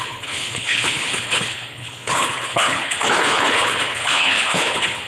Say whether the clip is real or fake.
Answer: fake